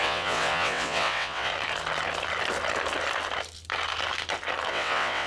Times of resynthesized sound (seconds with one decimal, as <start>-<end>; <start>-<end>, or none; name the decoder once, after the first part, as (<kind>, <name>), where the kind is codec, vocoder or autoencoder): 0.0-1.5 (vocoder, WaveNeXt); 4.7-5.3